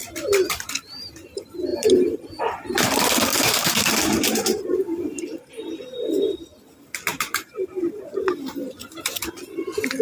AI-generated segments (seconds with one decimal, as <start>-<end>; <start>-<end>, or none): 1.7-2.4; 3.3-5.4; 7.1-8.3